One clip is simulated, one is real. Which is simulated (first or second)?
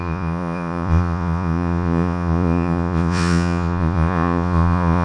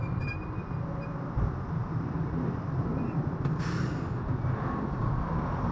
first